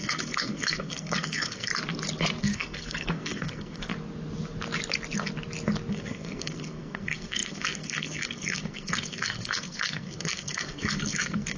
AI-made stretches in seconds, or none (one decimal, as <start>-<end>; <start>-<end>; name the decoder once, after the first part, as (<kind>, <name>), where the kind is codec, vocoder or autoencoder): 0.0-1.7 (codec, SNAC); 2.4-3.9; 5.9-11.6